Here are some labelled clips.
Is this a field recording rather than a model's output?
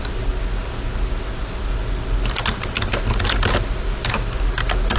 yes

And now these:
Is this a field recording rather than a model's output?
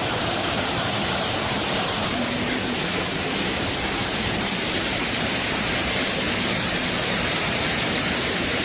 no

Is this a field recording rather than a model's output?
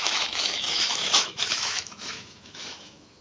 no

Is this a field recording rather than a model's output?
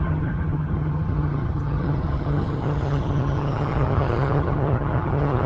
no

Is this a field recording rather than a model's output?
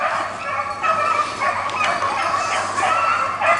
yes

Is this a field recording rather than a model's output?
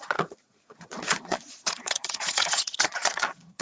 no